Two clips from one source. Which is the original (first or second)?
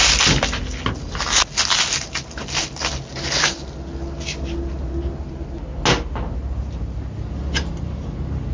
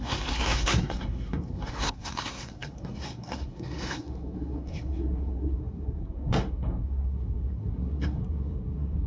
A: first